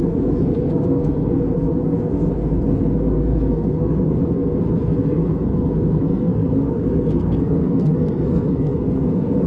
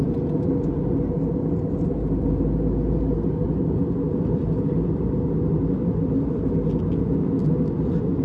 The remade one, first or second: first